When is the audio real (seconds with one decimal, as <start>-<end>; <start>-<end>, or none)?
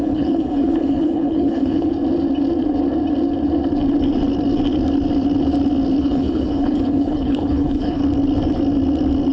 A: 1.9-6.0; 8.0-9.3